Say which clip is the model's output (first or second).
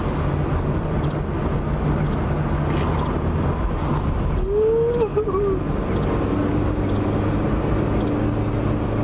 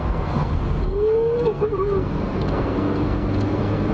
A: second